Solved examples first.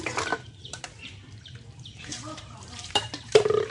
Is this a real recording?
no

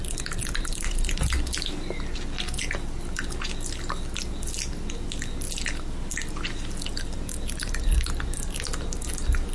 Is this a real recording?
yes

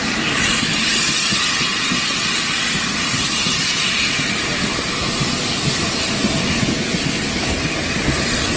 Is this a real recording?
yes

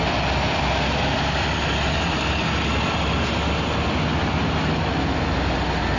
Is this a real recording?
yes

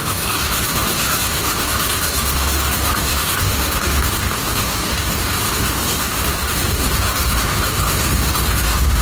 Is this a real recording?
no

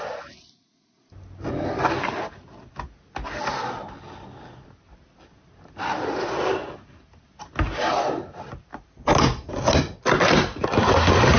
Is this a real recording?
yes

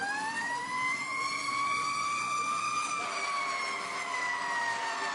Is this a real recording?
no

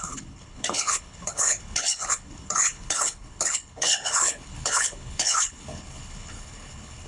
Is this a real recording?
no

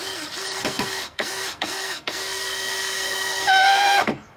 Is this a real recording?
no